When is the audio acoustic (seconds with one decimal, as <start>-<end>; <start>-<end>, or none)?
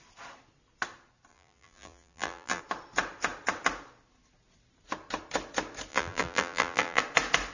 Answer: 0.0-1.3; 2.6-5.9; 7.0-7.5